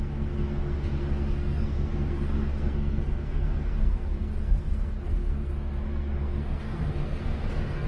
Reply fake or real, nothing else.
fake